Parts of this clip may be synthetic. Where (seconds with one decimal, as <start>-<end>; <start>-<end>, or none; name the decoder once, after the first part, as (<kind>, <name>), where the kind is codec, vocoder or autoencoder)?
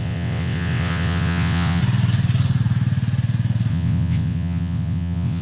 0.0-1.8 (vocoder, WaveNeXt); 3.7-5.4